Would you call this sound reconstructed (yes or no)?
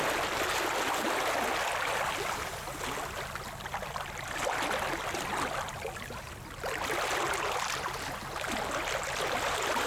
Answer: no